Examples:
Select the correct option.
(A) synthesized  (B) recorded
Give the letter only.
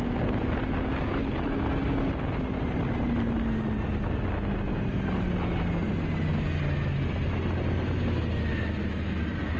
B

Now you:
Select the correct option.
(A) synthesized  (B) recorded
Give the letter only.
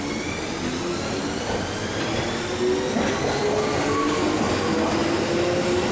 B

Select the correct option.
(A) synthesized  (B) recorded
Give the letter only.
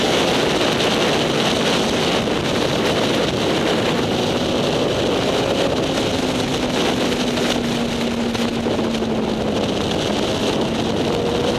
B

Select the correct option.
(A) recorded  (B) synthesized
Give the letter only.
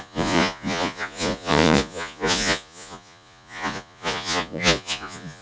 B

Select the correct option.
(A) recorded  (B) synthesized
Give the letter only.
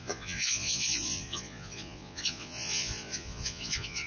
B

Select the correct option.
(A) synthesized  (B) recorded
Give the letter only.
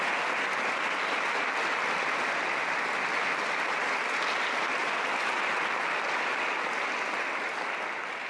B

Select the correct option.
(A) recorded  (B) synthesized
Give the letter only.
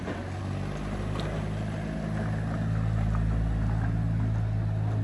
A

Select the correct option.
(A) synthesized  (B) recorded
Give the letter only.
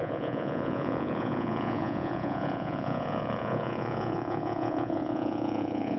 A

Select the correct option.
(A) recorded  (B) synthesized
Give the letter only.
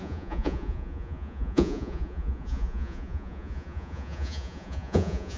B